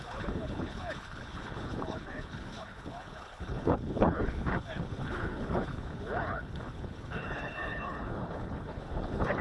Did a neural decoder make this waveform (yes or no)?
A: yes